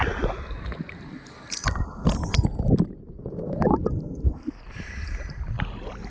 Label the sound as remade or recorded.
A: recorded